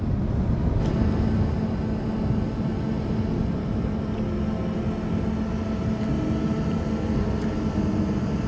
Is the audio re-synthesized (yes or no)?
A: no